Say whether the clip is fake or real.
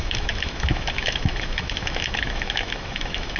fake